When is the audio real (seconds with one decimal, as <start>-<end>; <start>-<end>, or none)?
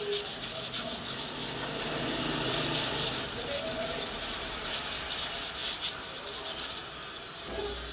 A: 0.0-7.9